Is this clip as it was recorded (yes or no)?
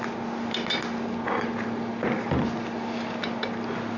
yes